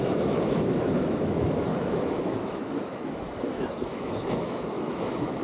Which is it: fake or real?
fake